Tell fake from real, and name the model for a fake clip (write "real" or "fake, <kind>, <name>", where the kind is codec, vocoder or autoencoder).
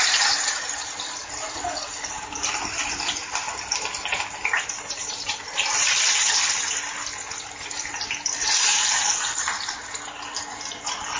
real